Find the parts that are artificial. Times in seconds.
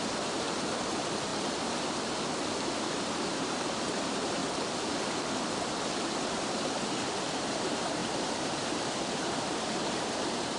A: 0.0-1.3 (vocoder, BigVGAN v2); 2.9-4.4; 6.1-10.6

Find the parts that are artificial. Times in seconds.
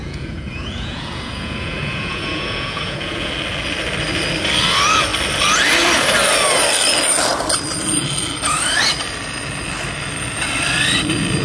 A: 0.0-3.3 (vocoder, Vocos)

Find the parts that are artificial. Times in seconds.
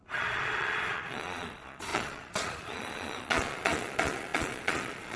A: 0.0-5.2 (vocoder, Vocos)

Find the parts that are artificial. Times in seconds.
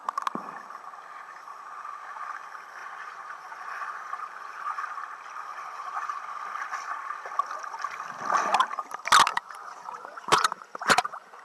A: 2.8-4.8 (vocoder, Vocos); 5.5-6.2; 9.3-11.4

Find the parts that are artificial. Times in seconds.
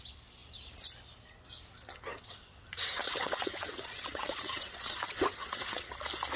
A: 2.1-5.9 (vocoder, WaveNeXt)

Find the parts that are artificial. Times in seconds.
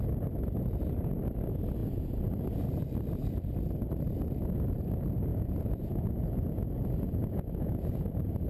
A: 1.8-2.3 (vocoder, Vocos); 5.3-8.0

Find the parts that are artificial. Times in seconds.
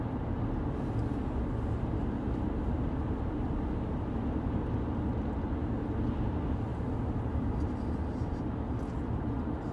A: none